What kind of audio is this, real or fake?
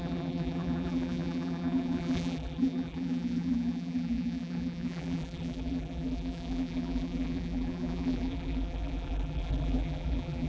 fake